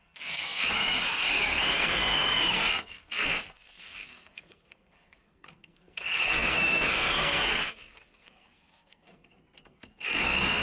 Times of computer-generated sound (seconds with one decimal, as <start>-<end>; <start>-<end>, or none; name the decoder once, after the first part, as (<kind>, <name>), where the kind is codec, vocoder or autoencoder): 0.0-10.6 (codec, SNAC)